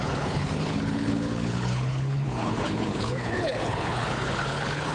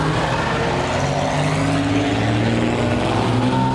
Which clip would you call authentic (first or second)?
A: second